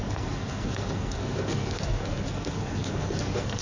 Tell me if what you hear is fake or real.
fake